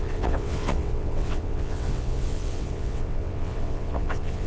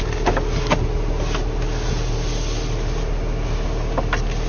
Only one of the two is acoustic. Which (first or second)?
second